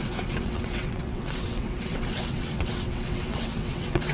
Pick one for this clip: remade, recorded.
remade